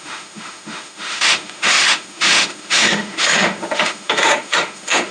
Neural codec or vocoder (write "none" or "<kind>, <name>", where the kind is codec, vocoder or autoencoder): autoencoder, DAC-VAE